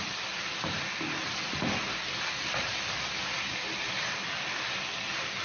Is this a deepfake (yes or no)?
no